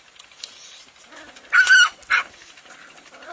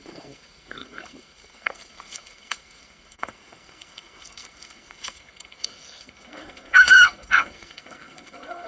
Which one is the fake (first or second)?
second